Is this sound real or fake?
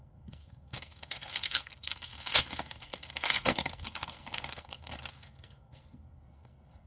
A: fake